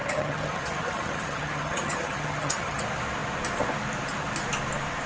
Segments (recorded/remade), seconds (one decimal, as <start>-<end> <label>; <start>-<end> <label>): 0.0-2.8 remade; 2.8-5.1 recorded

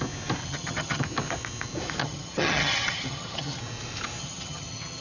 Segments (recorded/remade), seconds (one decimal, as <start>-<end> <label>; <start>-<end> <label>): 0.0-0.4 recorded; 0.4-1.0 remade; 1.0-2.0 recorded; 2.0-3.6 remade; 3.6-4.2 recorded; 4.2-5.0 remade